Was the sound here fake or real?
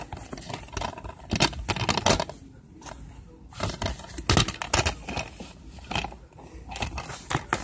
real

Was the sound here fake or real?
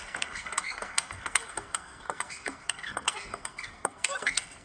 fake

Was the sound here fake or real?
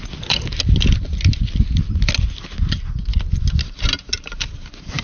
real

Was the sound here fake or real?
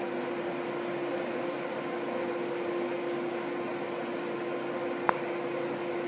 real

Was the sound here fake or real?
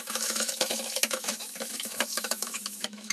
fake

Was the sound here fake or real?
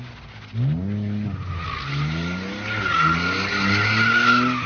real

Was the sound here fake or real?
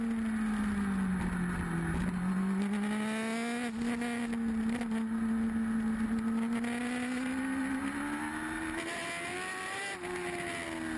real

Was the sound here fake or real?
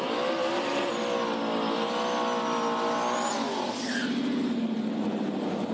real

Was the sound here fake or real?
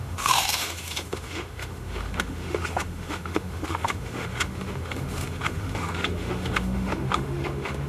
fake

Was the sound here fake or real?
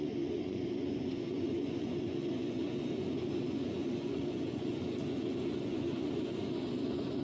fake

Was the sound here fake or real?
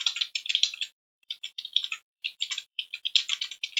fake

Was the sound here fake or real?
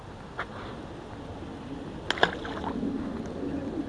real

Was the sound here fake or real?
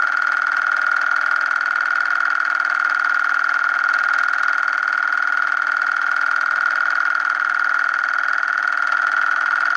real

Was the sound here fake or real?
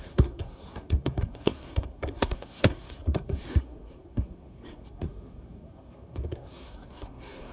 fake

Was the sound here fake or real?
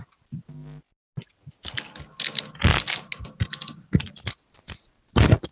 real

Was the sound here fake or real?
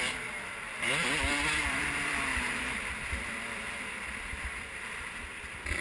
fake